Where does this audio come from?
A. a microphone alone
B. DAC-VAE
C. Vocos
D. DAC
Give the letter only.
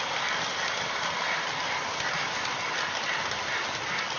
A